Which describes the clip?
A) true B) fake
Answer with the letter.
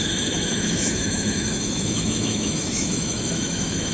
B